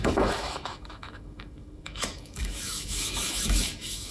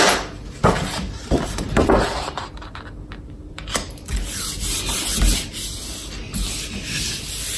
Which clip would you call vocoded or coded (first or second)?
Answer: first